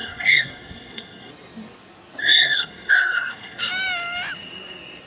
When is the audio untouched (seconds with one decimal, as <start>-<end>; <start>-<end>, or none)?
1.3-2.2; 3.7-5.1